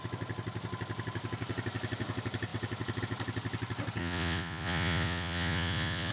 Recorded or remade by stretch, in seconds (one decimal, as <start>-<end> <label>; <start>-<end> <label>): 0.0-4.0 recorded; 4.0-6.1 remade